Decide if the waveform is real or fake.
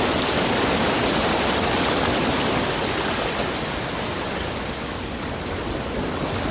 real